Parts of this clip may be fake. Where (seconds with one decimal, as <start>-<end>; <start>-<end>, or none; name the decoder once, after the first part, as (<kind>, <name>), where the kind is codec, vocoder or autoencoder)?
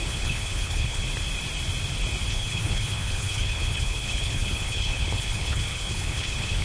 0.0-1.0 (codec, HILCodec); 2.3-6.6